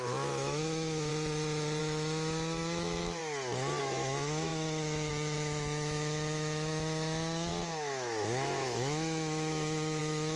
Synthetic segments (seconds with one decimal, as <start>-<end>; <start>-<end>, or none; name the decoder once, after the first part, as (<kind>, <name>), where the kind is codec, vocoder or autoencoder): 0.0-1.1 (autoencoder, DAC-VAE); 1.8-3.2; 3.8-10.4